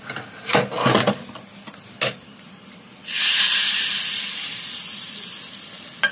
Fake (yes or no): no